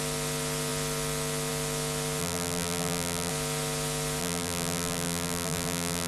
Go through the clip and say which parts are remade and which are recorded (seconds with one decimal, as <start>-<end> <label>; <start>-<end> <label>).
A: 0.0-2.2 recorded; 2.2-3.3 remade; 3.3-4.2 recorded; 4.2-6.1 remade